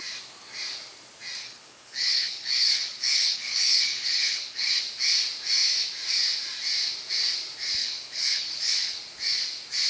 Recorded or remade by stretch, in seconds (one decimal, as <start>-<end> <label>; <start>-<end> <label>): 0.0-1.4 recorded; 1.4-4.8 remade; 4.8-7.8 recorded; 7.8-9.0 remade; 9.0-9.9 recorded